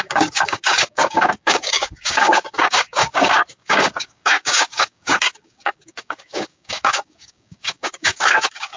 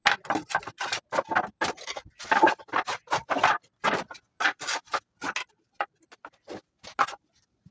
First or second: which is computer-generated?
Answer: first